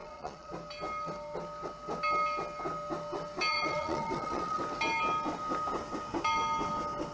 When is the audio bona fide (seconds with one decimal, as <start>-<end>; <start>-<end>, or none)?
0.5-3.5; 4.6-7.1